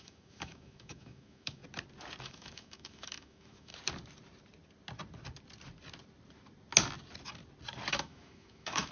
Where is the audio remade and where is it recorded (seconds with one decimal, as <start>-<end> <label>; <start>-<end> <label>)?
0.0-1.6 remade; 1.6-2.2 recorded; 2.2-3.7 remade; 3.7-7.9 recorded; 7.9-8.9 remade